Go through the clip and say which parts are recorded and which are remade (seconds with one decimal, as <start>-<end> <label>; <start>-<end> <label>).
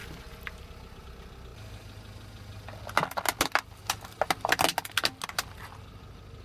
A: 0.0-6.4 recorded